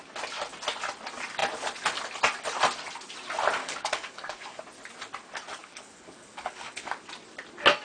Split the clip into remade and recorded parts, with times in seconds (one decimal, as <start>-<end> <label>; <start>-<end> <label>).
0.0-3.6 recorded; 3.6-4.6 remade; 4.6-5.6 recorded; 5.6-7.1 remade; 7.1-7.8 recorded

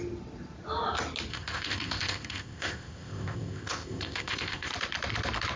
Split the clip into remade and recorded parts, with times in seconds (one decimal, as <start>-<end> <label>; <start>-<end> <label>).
0.0-1.3 recorded; 1.3-4.7 remade; 4.7-5.6 recorded

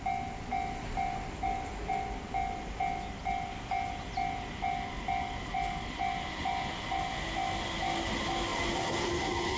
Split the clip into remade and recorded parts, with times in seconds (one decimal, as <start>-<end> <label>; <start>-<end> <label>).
0.0-9.6 recorded

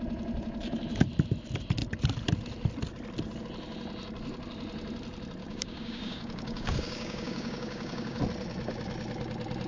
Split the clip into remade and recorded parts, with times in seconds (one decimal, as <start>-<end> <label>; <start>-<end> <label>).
0.0-5.4 recorded; 5.4-8.2 remade; 8.2-9.7 recorded

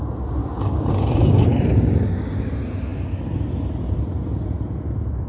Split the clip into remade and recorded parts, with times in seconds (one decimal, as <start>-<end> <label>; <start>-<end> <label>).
0.0-0.4 recorded; 0.4-2.5 remade; 2.5-5.3 recorded